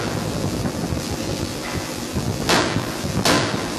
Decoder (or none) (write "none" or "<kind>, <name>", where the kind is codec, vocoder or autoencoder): vocoder, BigVGAN v2